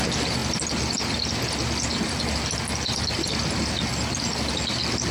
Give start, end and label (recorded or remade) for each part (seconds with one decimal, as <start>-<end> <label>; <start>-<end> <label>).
0.0-5.1 recorded